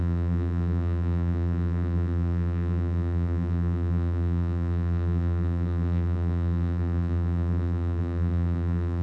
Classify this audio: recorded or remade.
remade